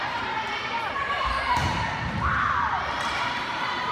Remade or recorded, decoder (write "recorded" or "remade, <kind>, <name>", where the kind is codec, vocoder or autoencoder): remade, vocoder, BigVGAN v2